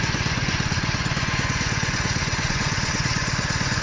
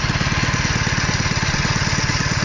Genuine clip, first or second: second